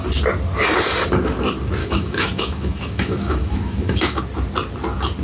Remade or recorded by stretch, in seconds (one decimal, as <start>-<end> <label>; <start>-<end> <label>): 0.0-1.8 recorded; 1.8-4.2 remade; 4.2-5.2 recorded